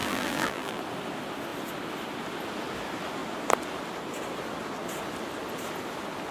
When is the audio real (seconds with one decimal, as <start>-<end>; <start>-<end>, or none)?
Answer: 0.8-6.3